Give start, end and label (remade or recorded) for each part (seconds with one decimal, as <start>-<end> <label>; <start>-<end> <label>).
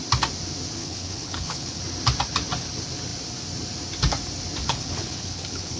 0.0-0.8 recorded; 0.8-1.8 remade; 1.8-4.6 recorded; 4.6-5.8 remade